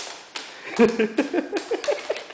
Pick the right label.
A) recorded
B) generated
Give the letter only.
A